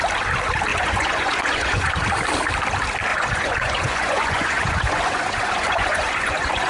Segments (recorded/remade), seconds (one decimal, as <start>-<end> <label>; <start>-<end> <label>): 0.0-0.7 recorded; 0.7-1.9 remade; 1.9-3.1 recorded; 3.1-6.7 remade